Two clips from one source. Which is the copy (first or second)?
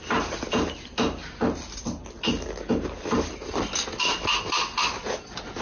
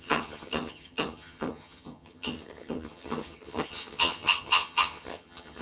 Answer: second